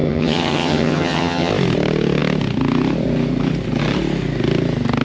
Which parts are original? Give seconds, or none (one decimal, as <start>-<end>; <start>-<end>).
1.5-5.0